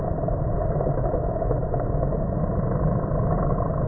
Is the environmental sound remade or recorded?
recorded